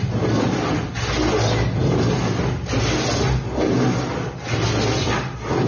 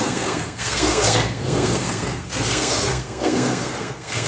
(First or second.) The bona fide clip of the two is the first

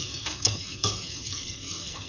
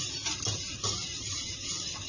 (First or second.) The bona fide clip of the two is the second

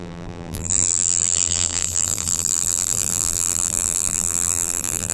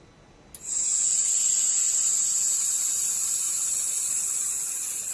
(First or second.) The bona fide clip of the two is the second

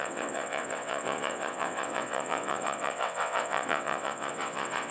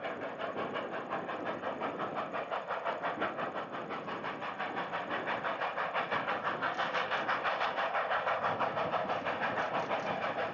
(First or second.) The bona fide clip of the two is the second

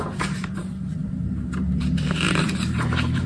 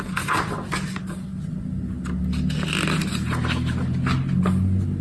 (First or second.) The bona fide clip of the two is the second